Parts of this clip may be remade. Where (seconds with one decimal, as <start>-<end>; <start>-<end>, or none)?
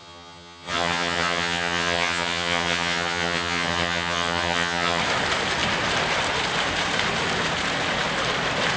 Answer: 0.0-5.0